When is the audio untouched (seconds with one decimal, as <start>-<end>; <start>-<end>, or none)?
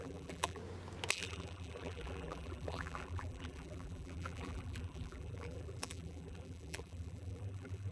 0.6-1.1